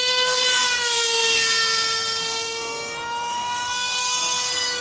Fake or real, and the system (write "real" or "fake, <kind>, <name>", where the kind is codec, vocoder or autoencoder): fake, codec, SNAC